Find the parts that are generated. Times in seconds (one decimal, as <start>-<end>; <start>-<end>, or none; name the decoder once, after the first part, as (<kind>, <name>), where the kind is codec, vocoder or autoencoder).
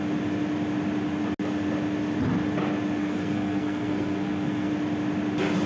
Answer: 3.0-4.7 (codec, SNAC)